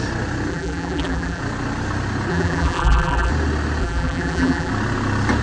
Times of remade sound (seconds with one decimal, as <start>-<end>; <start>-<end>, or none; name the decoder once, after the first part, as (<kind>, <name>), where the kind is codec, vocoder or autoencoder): 0.5-1.4 (vocoder, BigVGAN v2); 2.3-3.3; 3.8-4.7